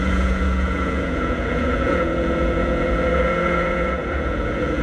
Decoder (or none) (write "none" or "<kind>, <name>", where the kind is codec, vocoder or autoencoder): vocoder, Vocos